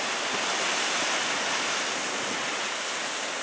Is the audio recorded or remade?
recorded